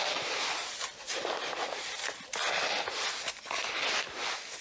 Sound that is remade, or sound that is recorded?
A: recorded